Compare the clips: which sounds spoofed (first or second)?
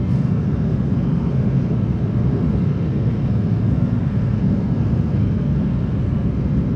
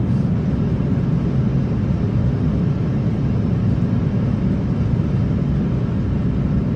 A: first